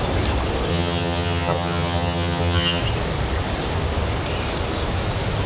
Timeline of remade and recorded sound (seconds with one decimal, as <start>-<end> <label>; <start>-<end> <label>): 0.0-0.7 recorded; 0.7-2.8 remade; 2.8-5.5 recorded